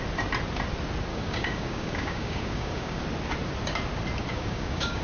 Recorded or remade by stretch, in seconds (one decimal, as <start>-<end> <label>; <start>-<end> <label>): 0.0-1.1 recorded; 1.1-3.0 remade; 3.0-4.3 recorded; 4.3-5.0 remade